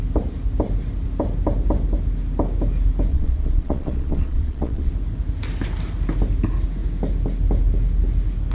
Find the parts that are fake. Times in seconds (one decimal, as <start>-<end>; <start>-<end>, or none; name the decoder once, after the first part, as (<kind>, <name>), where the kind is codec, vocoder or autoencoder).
3.1-4.9 (vocoder, Vocos)